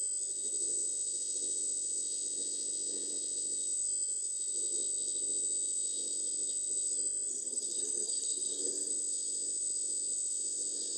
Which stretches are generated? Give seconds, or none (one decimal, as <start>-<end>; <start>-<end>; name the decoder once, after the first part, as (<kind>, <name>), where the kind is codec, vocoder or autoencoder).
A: 7.3-8.9 (codec, SNAC)